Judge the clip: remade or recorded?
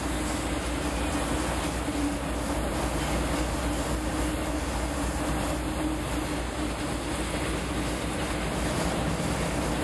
recorded